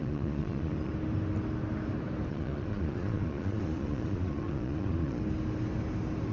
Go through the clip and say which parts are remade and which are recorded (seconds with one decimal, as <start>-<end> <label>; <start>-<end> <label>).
0.0-0.9 remade; 0.9-2.3 recorded; 2.3-5.2 remade; 5.2-6.3 recorded